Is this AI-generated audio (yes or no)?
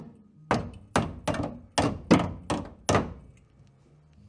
no